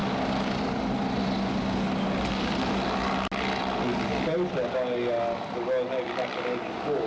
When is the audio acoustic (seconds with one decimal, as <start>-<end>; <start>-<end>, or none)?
0.0-7.1